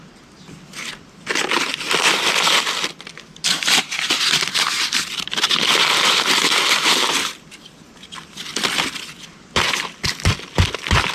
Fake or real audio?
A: real